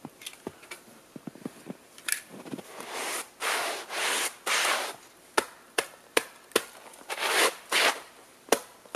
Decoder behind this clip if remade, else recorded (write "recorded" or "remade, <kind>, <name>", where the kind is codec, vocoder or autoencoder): recorded